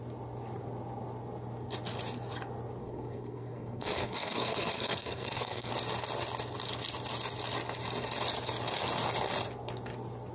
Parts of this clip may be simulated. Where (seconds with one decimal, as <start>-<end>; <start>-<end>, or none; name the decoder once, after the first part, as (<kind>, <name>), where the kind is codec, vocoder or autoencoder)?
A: 2.8-5.7 (codec, SNAC)

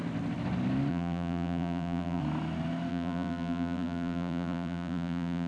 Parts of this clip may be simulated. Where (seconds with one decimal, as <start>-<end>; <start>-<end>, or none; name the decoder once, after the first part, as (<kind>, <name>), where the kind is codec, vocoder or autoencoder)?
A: 0.9-2.2 (vocoder, BigVGAN v2); 2.9-5.5